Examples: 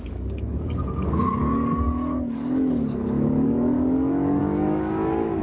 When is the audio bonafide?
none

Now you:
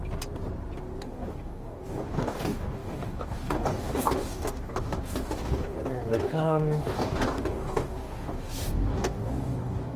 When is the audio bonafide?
0.0-1.0

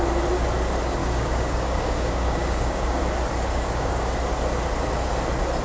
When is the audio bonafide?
0.0-1.0; 3.0-3.5; 4.1-5.6

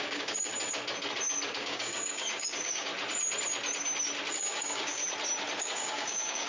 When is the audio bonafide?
0.5-1.6; 2.9-4.3; 5.0-5.6

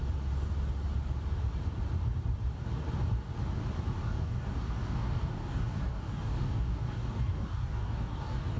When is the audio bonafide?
0.0-4.0

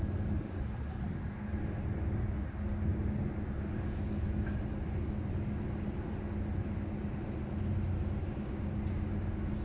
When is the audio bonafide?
0.0-8.2; 8.7-9.6

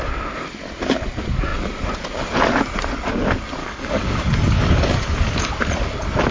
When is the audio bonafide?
0.0-3.6; 5.5-6.3

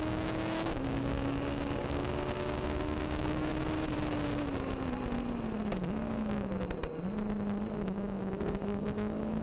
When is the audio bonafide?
3.5-5.7; 6.5-7.8